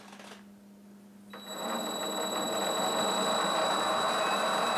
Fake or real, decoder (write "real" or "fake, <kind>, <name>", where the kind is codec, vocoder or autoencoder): real